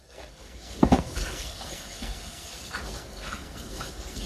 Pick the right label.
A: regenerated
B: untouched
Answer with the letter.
A